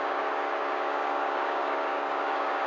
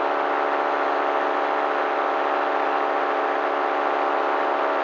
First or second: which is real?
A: second